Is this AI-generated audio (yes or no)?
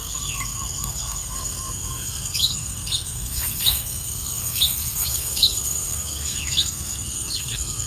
yes